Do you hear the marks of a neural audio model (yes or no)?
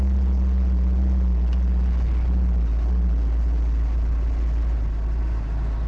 no